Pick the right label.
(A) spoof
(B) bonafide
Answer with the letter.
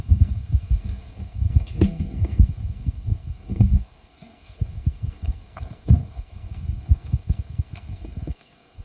A